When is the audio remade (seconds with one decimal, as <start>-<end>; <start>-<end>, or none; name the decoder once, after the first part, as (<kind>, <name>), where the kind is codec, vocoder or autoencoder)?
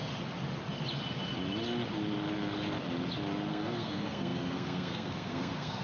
3.5-5.8 (codec, SNAC)